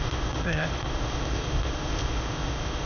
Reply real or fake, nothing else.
fake